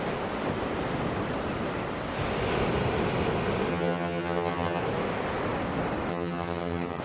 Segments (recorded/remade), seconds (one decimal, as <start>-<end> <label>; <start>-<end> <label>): 0.0-3.7 recorded; 3.7-4.8 remade; 4.8-6.1 recorded; 6.1-7.0 remade